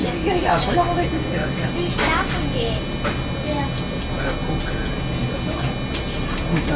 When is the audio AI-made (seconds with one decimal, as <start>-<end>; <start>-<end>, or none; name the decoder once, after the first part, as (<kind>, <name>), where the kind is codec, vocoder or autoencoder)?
none